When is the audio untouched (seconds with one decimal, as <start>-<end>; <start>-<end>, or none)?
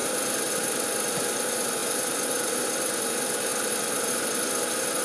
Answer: 0.0-5.0